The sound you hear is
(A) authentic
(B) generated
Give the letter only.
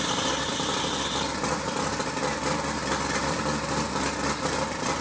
A